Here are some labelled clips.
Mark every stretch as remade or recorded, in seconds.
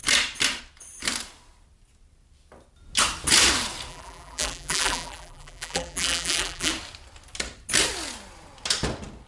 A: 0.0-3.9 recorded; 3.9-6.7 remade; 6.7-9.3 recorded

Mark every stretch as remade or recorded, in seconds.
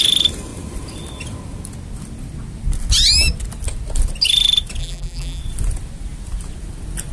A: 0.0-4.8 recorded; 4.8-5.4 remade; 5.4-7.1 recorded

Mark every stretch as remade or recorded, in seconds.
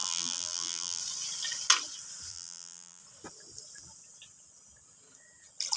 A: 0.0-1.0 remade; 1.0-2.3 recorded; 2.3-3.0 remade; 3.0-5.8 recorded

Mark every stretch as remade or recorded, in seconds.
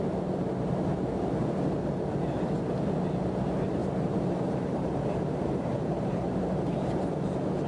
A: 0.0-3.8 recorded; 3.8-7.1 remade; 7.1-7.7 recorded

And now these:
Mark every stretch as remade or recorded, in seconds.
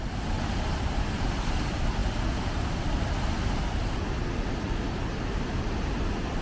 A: 0.0-6.4 recorded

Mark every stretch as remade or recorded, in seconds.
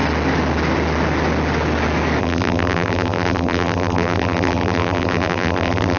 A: 0.0-2.2 recorded; 2.2-6.0 remade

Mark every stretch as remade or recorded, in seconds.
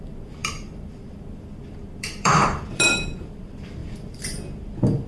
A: 0.0-5.1 remade